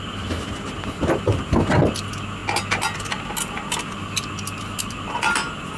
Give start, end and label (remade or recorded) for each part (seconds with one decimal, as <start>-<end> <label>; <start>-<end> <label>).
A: 0.0-5.8 recorded